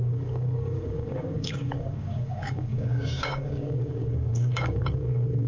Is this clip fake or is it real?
fake